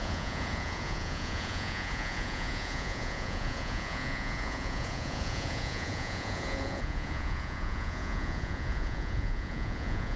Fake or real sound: fake